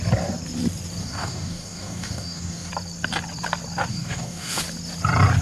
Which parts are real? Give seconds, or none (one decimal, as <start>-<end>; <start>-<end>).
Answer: 0.0-1.0; 2.7-3.9; 4.6-5.4